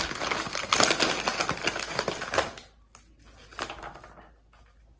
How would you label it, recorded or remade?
recorded